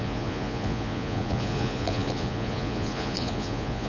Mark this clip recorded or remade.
remade